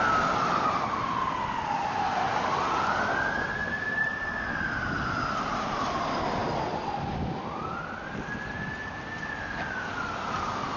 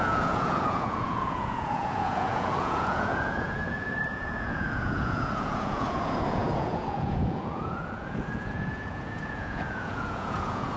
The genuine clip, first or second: first